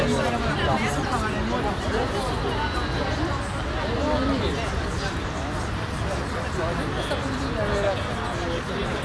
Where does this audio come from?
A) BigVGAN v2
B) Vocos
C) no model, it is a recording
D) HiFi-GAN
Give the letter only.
C